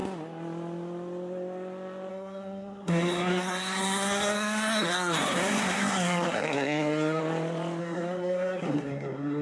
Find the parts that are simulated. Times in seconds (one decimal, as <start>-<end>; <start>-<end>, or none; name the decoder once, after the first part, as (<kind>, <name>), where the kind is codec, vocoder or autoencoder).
2.1-7.2 (codec, SNAC); 7.8-9.4